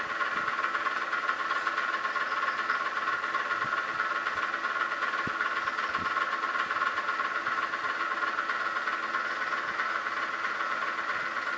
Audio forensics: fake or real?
real